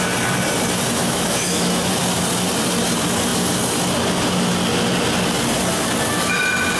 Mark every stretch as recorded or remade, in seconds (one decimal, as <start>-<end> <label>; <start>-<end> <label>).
0.0-1.0 recorded; 1.0-1.9 remade; 1.9-6.8 recorded